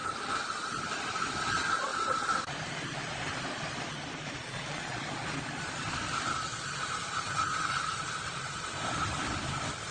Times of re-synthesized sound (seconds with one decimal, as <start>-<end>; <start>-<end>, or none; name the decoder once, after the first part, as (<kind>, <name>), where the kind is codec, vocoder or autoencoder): 4.4-5.0 (vocoder, Vocos)